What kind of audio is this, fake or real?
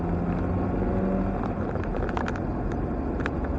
real